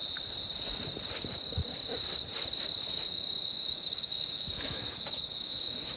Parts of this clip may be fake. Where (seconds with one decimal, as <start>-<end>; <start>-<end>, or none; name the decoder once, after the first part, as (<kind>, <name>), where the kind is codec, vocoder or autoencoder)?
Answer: 2.9-6.0 (codec, DAC)